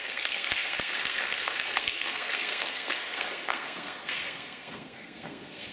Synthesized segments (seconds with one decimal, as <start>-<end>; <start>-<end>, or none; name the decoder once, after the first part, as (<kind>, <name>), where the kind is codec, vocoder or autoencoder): 0.0-5.7 (codec, SNAC)